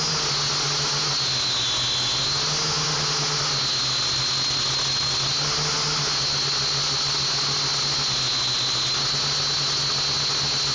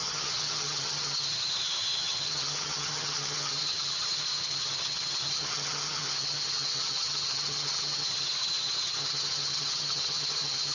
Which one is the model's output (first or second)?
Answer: second